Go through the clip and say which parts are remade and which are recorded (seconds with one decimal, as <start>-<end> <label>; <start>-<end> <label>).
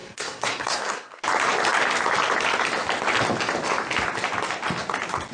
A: 0.0-1.2 remade; 1.2-5.3 recorded